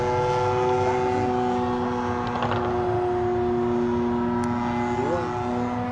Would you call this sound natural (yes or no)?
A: yes